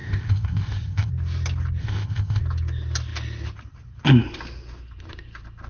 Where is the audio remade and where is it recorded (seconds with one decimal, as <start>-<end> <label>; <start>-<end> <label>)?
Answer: 0.0-1.1 remade; 1.1-1.8 recorded; 1.8-2.4 remade; 2.4-5.7 recorded